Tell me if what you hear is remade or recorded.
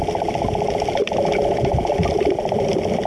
recorded